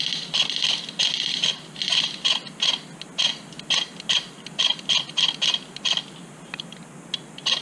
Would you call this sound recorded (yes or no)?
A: yes